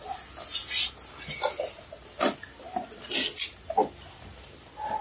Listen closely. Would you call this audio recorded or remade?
recorded